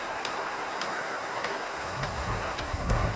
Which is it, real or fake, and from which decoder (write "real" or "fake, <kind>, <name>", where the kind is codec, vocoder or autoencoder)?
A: fake, codec, SNAC